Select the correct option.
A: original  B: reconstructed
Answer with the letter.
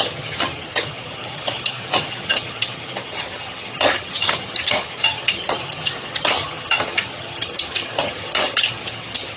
B